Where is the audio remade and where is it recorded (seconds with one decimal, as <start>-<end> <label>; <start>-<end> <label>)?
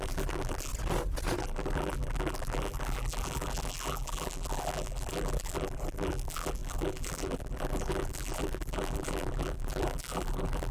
0.0-0.7 remade; 0.7-1.4 recorded; 1.4-10.7 remade